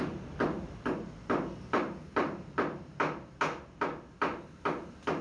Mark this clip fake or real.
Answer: real